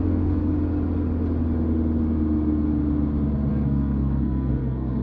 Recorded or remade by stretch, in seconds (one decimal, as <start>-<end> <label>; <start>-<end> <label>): 0.0-0.5 remade; 0.5-3.5 recorded; 3.5-5.0 remade